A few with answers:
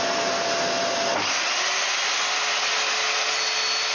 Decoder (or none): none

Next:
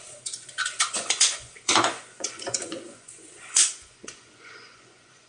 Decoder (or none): vocoder, Vocos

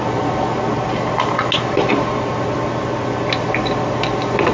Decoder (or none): none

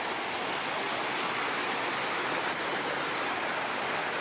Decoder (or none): none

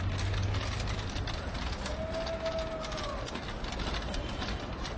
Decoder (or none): none